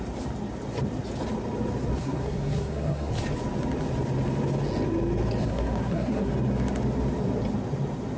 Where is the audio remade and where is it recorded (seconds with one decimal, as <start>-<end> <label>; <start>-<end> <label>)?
0.0-2.0 recorded; 2.0-3.1 remade; 3.1-5.4 recorded; 5.4-6.3 remade; 6.3-8.2 recorded